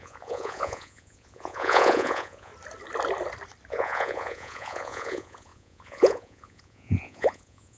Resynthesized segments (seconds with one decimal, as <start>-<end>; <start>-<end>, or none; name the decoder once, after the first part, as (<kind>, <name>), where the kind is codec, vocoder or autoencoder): 0.0-2.5 (vocoder, Vocos); 3.7-7.8